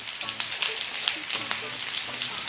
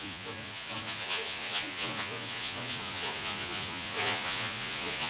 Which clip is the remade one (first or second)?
second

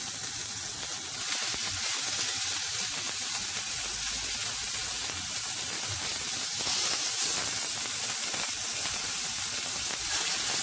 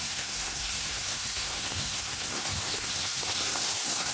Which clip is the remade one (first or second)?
second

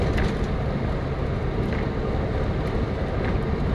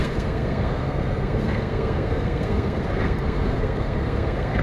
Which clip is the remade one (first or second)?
second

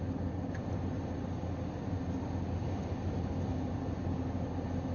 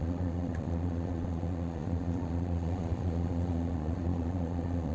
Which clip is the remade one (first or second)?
second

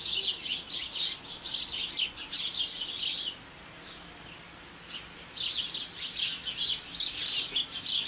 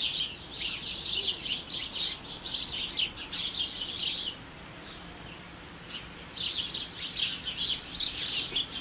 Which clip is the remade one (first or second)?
second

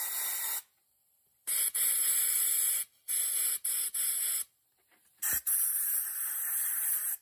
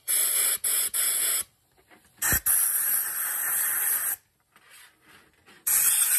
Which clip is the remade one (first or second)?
first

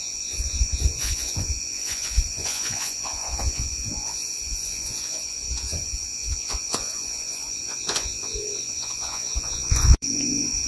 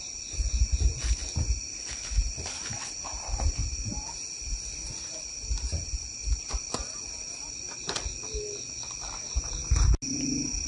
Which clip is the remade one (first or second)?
first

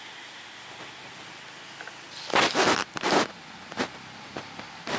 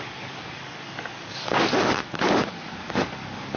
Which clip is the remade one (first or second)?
second